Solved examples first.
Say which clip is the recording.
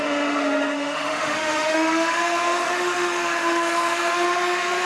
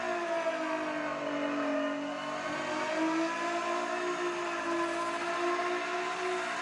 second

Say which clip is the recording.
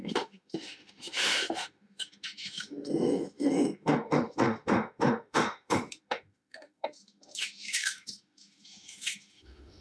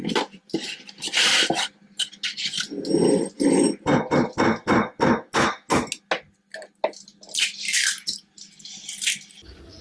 second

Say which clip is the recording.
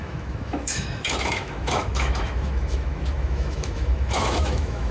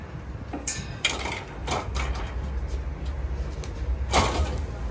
second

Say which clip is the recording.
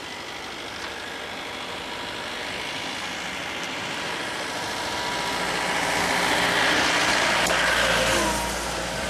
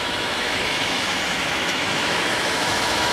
first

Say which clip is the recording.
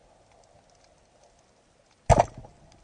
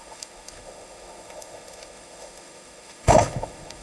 first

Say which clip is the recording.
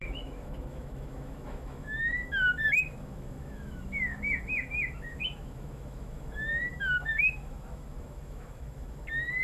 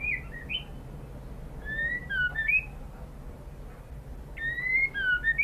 second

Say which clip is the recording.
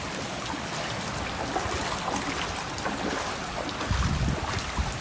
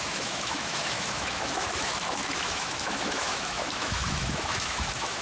first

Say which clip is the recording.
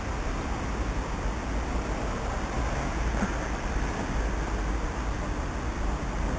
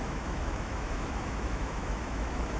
first